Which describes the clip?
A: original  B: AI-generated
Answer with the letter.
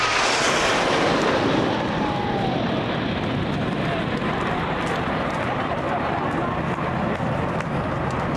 A